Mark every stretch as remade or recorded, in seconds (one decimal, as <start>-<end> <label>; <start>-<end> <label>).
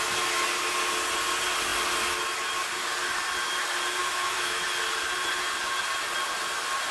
0.0-4.0 recorded; 4.0-4.6 remade; 4.6-6.9 recorded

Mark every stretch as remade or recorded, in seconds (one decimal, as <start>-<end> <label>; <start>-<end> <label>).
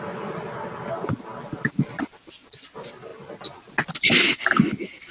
0.0-5.1 recorded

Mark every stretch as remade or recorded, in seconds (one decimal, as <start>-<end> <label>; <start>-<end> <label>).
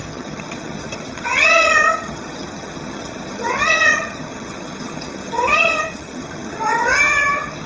0.0-7.7 remade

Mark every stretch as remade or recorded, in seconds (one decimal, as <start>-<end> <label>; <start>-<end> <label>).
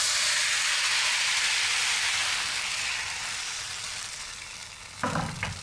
0.0-2.2 remade; 2.2-3.3 recorded; 3.3-4.6 remade; 4.6-5.6 recorded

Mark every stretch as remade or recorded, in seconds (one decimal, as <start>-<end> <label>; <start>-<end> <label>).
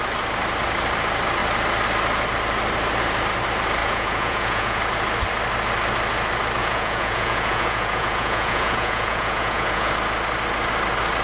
0.0-3.8 recorded; 3.8-4.8 remade; 4.8-6.6 recorded; 6.6-9.9 remade; 9.9-11.2 recorded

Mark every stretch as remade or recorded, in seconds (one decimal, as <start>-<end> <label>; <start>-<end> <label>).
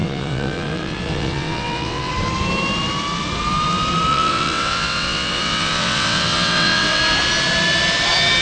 0.0-2.1 remade; 2.1-4.1 recorded; 4.1-7.0 remade; 7.0-8.4 recorded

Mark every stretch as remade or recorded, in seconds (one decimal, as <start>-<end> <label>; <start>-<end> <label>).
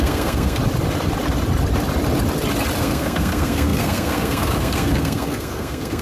0.0-0.6 remade; 0.6-2.8 recorded; 2.8-6.0 remade